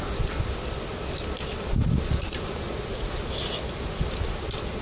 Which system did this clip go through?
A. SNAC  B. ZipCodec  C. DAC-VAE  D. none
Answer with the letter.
D